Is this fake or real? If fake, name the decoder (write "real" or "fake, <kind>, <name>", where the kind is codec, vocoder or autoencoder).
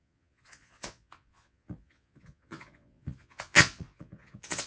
fake, vocoder, Vocos